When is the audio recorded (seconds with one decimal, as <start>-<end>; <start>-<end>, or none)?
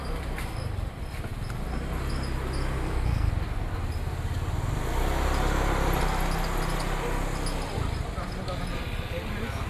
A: 0.0-2.8; 3.3-9.7